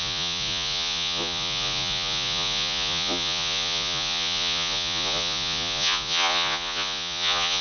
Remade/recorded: remade